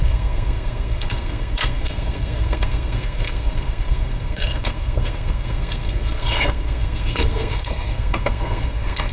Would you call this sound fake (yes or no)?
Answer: yes